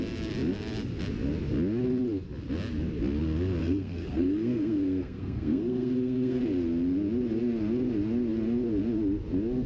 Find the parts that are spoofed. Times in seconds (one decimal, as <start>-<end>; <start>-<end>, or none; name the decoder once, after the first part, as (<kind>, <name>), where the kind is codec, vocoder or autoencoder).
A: 3.6-6.4 (codec, SNAC)